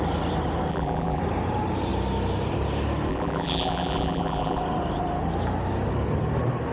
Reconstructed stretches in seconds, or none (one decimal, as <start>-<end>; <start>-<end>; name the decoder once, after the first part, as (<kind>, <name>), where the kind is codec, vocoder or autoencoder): 0.7-1.2 (vocoder, BigVGAN v2); 3.1-4.6